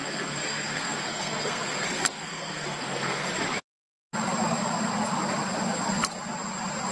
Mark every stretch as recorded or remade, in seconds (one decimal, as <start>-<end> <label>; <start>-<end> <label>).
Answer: 0.0-3.3 remade; 3.3-6.9 recorded